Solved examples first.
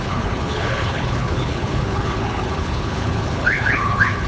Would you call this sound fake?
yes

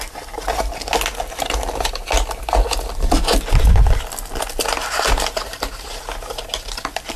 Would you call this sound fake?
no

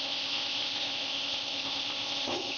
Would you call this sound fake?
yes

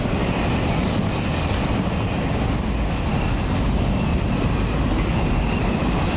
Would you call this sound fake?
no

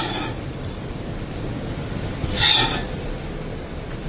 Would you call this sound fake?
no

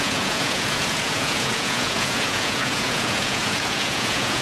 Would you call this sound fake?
yes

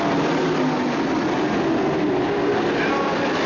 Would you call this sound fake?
no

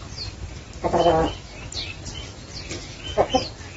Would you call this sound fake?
no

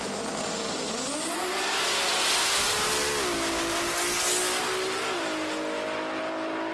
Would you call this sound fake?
no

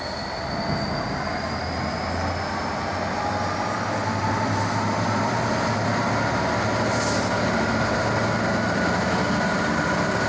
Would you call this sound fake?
no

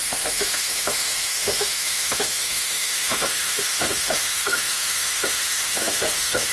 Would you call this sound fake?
yes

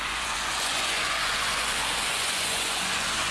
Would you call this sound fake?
yes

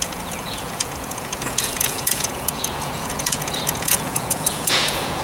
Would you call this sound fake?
yes